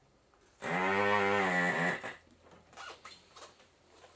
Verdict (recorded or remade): recorded